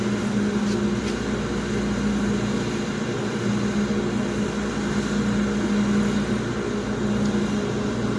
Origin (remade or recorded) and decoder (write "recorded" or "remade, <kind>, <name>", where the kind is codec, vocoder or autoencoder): recorded